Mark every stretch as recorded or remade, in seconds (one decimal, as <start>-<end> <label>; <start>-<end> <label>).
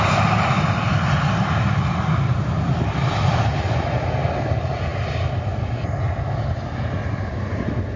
0.0-8.0 recorded